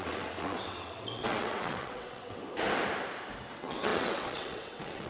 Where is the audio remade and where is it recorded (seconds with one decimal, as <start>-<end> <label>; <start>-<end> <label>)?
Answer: 0.0-2.4 remade; 2.4-3.5 recorded; 3.5-5.1 remade